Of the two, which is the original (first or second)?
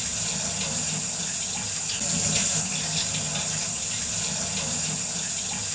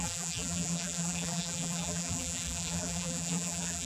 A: first